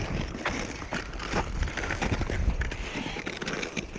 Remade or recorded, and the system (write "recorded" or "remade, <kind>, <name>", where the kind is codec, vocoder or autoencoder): recorded